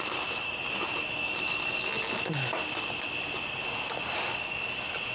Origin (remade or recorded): recorded